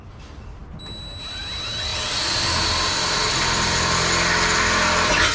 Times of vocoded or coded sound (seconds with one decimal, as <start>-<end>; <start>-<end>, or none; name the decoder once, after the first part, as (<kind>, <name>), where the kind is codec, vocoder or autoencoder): none